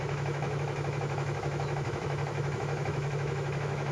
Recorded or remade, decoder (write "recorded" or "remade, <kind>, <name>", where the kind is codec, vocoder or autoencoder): remade, autoencoder, DAC-VAE